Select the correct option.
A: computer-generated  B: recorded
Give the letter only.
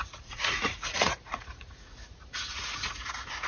A